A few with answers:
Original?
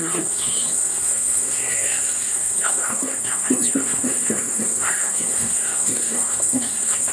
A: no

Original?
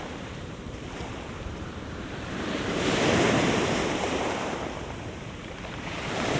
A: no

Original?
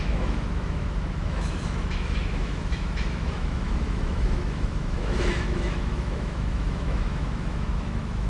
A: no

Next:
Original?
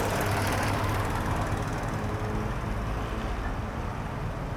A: yes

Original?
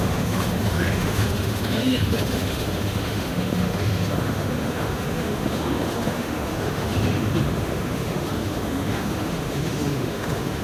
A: no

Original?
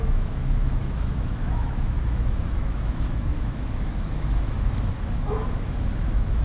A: no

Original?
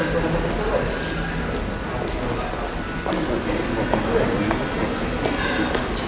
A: yes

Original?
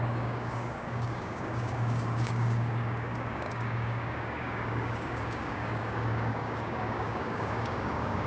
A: no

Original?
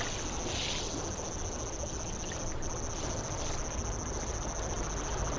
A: yes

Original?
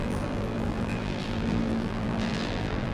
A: no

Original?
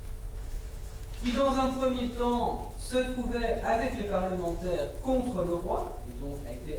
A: no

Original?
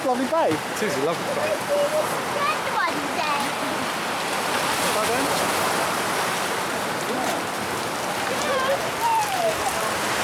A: yes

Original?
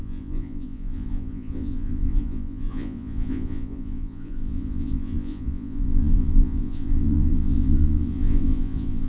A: no